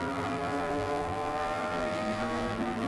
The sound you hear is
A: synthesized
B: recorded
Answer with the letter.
A